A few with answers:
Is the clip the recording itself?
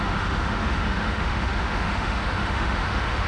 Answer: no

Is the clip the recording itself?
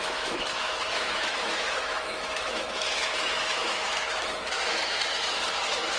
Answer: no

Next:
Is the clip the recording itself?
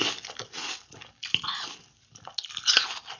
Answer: yes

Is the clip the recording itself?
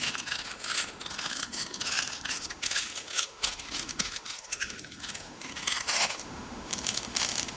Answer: no